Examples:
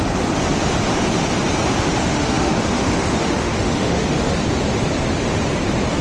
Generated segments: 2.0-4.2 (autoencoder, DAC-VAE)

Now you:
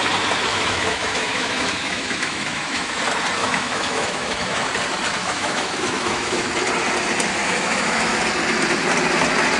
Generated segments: 0.5-3.0 (autoencoder, DAC-VAE); 3.4-4.7; 5.2-6.5; 7.4-8.2

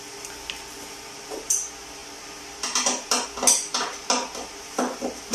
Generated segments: none

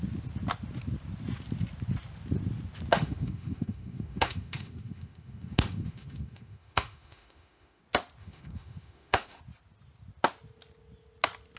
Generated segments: 2.9-7.8 (autoencoder, DAC-VAE); 8.2-9.4

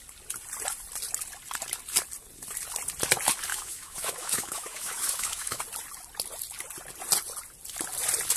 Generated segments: 3.5-5.6 (autoencoder, DAC-VAE)

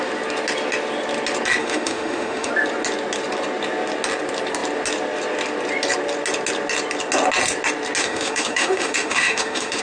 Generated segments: 1.6-2.5 (autoencoder, DAC-VAE); 8.0-9.8

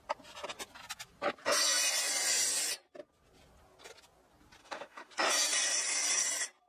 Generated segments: 4.6-5.1 (autoencoder, DAC-VAE)

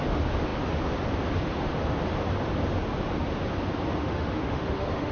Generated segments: 4.0-5.1 (autoencoder, DAC-VAE)